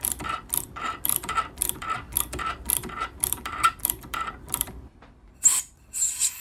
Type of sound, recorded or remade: remade